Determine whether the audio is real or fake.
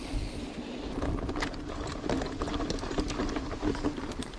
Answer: real